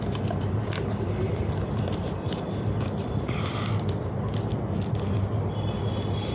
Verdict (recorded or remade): recorded